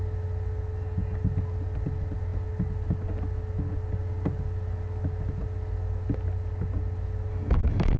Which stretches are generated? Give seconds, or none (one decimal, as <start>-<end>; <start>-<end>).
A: 7.3-8.0